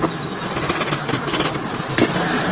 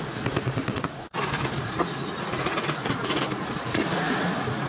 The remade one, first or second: second